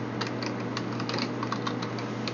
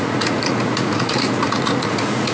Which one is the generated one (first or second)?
second